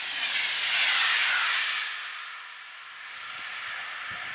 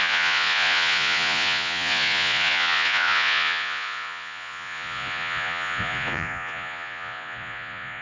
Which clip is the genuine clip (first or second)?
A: first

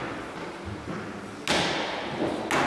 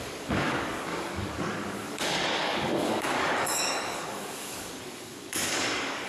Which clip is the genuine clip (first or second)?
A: first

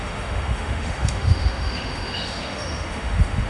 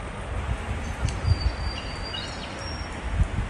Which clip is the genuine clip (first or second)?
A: second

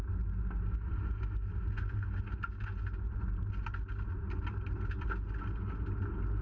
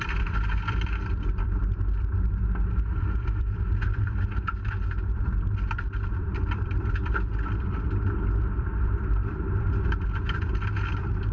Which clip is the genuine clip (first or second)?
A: first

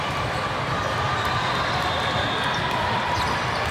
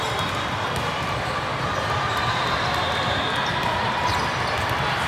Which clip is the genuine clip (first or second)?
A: second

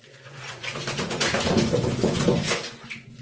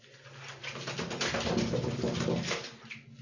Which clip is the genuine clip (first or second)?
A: second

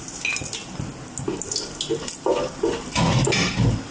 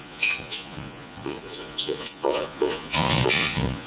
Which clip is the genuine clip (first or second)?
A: first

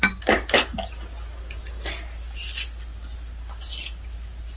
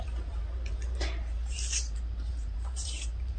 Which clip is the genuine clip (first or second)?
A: first